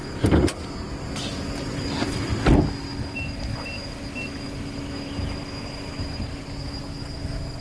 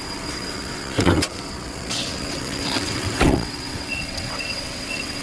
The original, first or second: first